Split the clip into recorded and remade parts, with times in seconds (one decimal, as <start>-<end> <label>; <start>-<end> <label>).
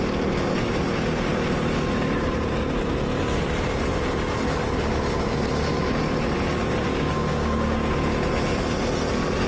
0.0-9.5 recorded